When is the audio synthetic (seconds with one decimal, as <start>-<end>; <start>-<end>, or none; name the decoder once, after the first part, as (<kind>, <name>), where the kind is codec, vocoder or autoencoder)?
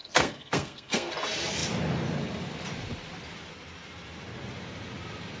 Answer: 0.0-1.1 (codec, SNAC)